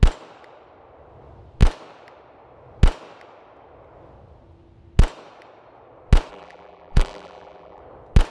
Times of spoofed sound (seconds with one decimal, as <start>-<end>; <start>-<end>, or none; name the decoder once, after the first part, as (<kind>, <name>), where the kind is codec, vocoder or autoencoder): 6.3-7.8 (vocoder, BigVGAN v2)